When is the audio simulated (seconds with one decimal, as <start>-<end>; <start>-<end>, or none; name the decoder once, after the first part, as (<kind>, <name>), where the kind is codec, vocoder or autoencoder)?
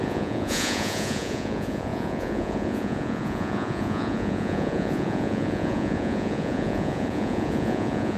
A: 0.0-8.2 (vocoder, Vocos)